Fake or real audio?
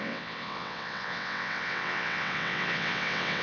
fake